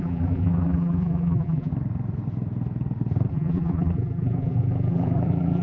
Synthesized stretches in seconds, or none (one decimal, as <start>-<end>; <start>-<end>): 0.0-1.7; 3.3-5.6